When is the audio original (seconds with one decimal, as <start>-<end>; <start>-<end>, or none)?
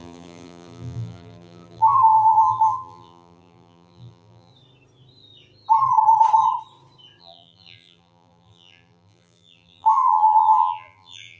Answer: 4.5-7.2